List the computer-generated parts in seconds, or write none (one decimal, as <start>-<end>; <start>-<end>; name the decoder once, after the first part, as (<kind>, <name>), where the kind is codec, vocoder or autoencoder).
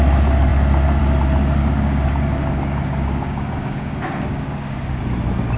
1.6-5.0 (codec, DAC)